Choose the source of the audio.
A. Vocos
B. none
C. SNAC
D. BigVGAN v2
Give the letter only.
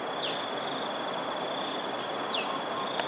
B